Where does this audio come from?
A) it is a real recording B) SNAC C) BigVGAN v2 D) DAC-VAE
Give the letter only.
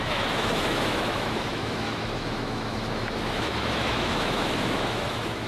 D